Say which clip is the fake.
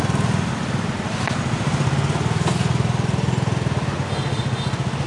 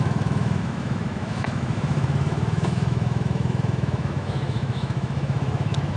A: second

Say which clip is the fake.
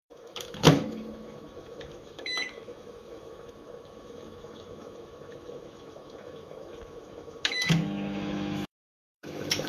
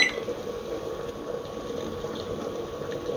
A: first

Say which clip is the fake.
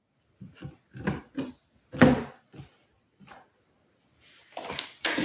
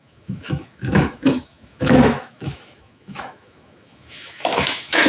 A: second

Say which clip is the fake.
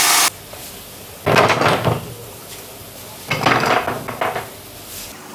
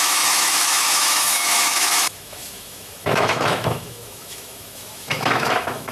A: second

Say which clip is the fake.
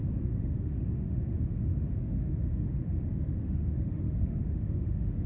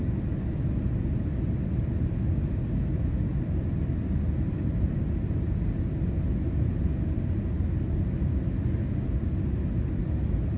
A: first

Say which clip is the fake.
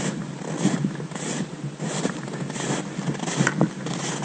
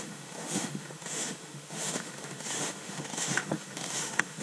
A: second